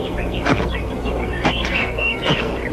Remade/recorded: remade